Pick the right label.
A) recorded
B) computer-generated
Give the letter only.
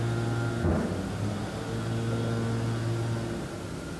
A